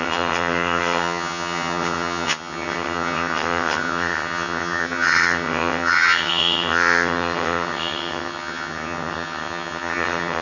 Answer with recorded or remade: remade